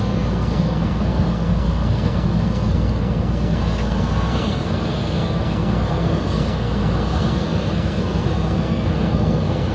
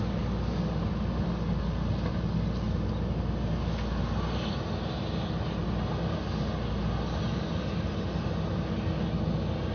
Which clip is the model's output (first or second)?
first